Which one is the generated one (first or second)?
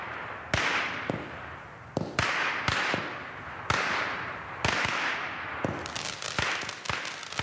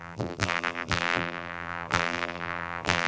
second